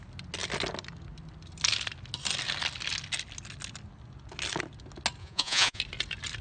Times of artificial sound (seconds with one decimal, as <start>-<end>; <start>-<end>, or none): 5.2-5.8